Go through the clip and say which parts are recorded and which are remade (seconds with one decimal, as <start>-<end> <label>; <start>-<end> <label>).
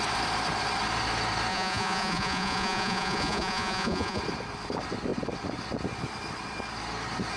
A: 0.0-1.5 recorded; 1.5-4.2 remade; 4.2-7.4 recorded